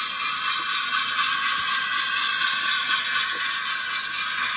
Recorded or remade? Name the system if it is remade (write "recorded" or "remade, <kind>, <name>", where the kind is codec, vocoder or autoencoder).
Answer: recorded